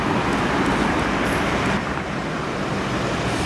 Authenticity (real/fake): real